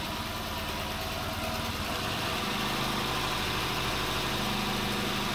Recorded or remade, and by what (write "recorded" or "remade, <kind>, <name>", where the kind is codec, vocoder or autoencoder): recorded